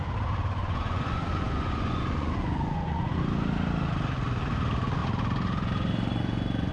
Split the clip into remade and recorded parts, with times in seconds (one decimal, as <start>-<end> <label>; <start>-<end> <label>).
0.0-0.6 recorded; 0.6-3.2 remade; 3.2-6.7 recorded